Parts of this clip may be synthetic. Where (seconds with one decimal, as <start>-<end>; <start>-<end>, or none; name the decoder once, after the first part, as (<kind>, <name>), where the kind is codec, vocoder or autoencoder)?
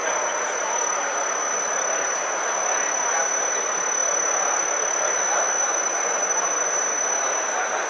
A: 5.6-6.7 (vocoder, Vocos)